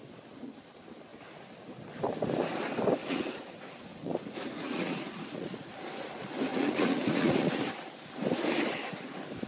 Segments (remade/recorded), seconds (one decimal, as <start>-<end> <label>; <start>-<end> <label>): 0.0-3.0 recorded; 3.0-5.7 remade; 5.7-6.5 recorded; 6.5-7.6 remade; 7.6-9.5 recorded